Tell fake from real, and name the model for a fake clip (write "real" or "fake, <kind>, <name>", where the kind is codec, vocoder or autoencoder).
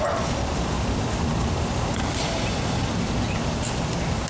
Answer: real